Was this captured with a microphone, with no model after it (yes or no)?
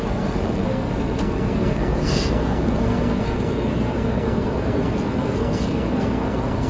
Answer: no